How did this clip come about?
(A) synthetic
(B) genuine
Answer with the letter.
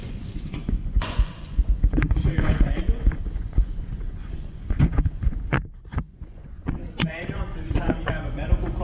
A